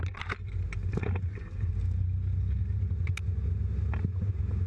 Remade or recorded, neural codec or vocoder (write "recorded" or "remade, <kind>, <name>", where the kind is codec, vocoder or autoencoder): recorded